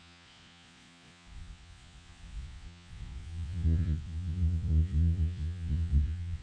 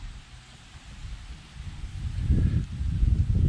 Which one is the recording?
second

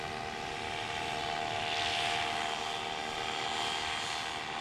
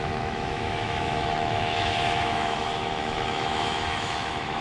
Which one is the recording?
first